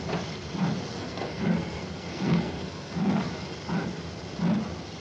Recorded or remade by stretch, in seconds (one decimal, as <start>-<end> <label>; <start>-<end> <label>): 0.0-0.9 recorded; 0.9-3.3 remade; 3.3-5.0 recorded